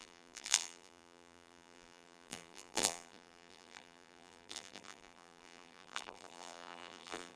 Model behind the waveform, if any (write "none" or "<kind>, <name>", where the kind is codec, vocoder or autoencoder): vocoder, BigVGAN v2